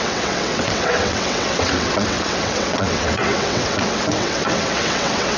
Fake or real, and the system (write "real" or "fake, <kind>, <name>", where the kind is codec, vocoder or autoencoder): fake, vocoder, WaveNeXt